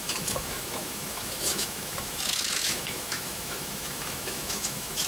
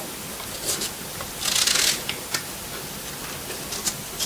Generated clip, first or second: first